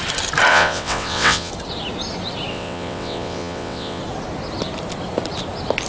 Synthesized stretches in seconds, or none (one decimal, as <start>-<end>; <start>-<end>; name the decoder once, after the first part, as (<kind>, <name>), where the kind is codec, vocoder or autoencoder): 0.5-1.5 (vocoder, WaveNeXt); 2.5-4.0